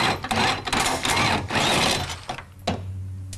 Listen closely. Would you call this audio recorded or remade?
recorded